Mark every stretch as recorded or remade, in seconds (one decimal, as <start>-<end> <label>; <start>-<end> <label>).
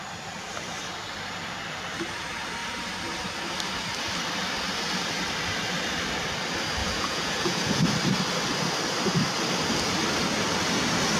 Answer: 0.0-6.8 recorded; 6.8-7.9 remade; 7.9-11.2 recorded